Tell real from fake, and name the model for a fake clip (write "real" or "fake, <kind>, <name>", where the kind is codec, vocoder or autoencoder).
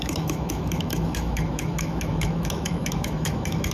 fake, autoencoder, DAC-VAE